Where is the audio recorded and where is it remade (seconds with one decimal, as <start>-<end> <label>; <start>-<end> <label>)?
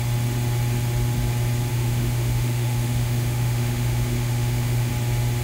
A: 0.0-1.7 recorded; 1.7-4.9 remade; 4.9-5.4 recorded